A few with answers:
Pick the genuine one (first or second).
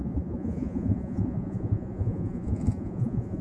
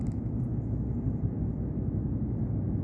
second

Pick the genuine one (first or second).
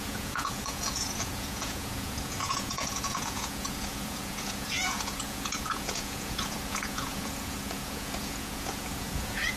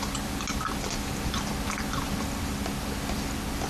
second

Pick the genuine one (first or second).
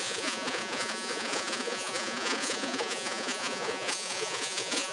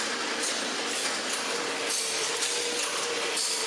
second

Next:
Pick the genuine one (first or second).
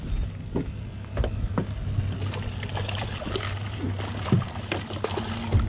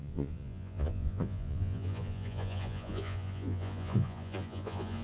first